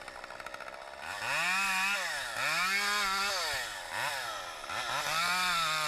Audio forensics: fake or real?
real